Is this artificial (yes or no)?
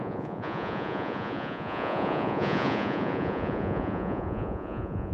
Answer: yes